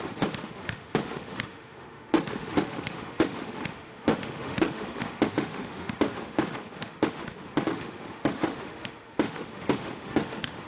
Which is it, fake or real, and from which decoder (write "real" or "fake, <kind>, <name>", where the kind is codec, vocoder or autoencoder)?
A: fake, autoencoder, DAC-VAE